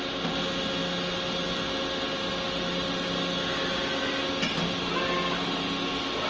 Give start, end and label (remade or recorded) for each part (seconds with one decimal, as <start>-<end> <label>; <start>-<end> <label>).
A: 0.0-6.3 recorded